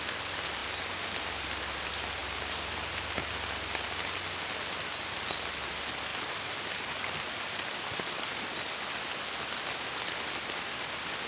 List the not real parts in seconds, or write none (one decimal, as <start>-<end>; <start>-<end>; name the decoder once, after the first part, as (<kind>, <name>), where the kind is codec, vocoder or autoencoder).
2.2-3.3 (vocoder, BigVGAN v2); 6.1-7.0